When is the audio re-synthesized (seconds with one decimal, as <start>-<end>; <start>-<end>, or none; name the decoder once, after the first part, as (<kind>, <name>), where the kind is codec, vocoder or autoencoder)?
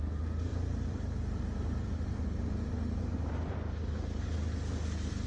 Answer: 0.5-3.7 (vocoder, BigVGAN v2)